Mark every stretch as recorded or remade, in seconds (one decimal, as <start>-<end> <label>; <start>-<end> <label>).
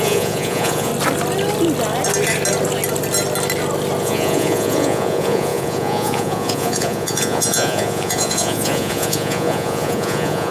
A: 0.0-0.9 remade; 0.9-4.0 recorded; 4.0-10.5 remade